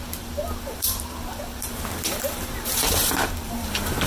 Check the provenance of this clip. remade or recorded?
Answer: remade